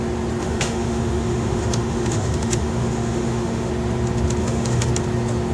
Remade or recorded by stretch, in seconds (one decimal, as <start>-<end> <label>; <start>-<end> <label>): 0.0-0.4 recorded; 0.4-3.7 remade; 3.7-4.4 recorded; 4.4-4.9 remade; 4.9-5.5 recorded